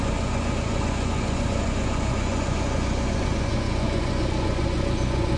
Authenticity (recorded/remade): remade